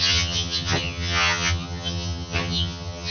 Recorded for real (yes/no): no